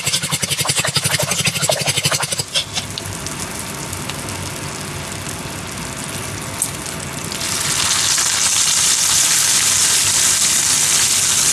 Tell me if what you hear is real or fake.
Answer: real